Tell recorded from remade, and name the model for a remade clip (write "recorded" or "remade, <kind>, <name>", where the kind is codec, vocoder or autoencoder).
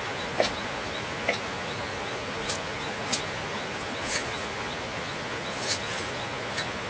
remade, vocoder, Vocos